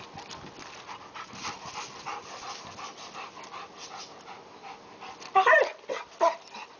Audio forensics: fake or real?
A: real